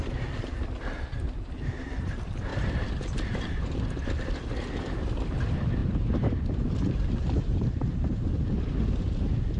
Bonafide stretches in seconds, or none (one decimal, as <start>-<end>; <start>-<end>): 0.0-2.5; 3.8-5.8; 8.5-9.6